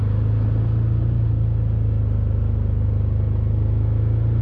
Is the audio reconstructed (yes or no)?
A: no